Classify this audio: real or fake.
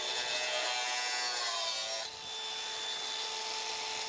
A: real